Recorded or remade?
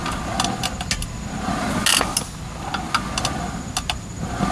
recorded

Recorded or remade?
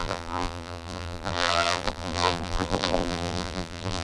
remade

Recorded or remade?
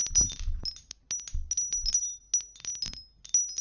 recorded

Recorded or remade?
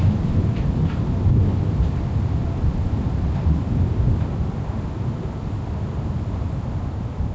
recorded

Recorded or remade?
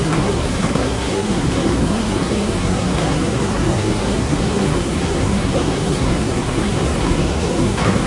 remade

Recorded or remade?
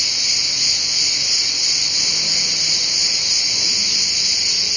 recorded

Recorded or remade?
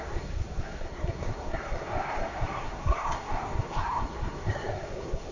remade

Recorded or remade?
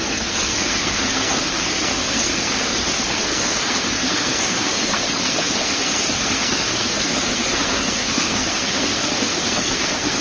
remade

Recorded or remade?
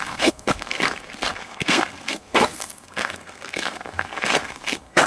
remade